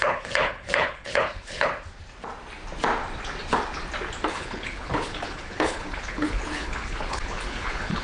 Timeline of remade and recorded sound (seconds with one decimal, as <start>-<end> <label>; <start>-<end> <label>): 0.0-1.7 remade; 1.7-4.3 recorded; 4.3-8.0 remade